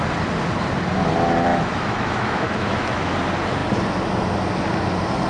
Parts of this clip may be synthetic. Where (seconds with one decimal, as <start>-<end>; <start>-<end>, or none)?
1.5-3.1